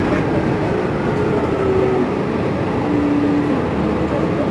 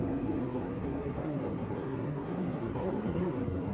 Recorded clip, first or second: first